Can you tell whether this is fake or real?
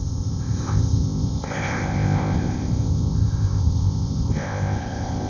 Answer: fake